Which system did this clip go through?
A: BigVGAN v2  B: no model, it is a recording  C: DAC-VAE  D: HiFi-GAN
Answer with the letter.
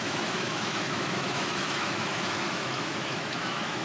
C